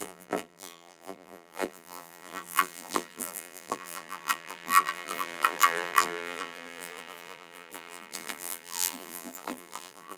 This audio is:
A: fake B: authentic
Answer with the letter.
A